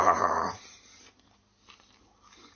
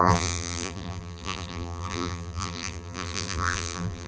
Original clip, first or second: first